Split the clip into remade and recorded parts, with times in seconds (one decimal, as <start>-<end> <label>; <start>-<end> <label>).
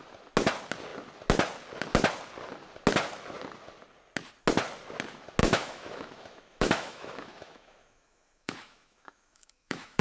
0.0-5.4 recorded; 5.4-10.0 remade